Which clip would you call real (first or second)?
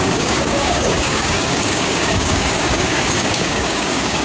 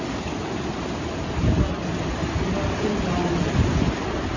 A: second